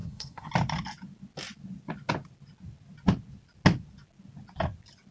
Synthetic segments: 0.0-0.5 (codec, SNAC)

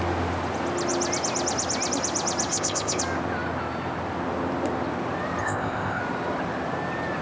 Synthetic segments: 2.5-3.0 (codec, ZipCodec); 5.4-6.0

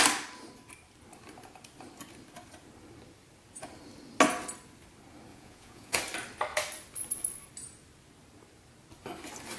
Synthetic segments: 5.3-6.0 (vocoder, Vocos)

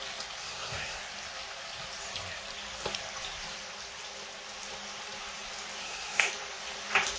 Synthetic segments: 0.4-1.0 (codec, SNAC); 5.8-6.3

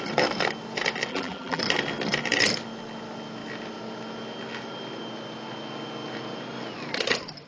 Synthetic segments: 1.1-1.6 (vocoder, BigVGAN v2)